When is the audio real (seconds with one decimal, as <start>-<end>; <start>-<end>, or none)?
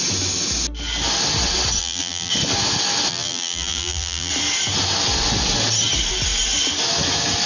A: 0.0-1.8; 2.3-3.1; 4.3-7.5